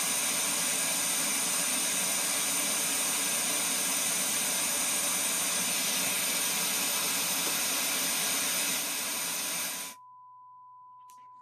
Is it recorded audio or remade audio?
recorded